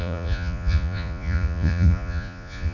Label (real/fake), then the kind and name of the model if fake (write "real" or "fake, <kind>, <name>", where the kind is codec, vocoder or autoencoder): fake, vocoder, Vocos